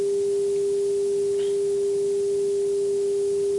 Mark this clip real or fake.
real